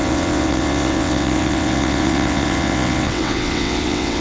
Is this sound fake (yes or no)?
yes